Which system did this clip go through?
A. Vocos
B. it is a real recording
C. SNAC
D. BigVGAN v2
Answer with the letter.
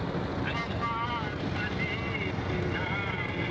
B